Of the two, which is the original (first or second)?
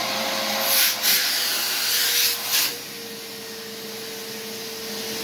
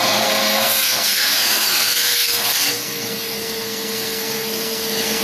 first